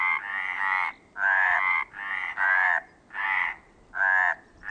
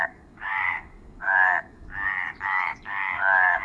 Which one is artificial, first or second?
second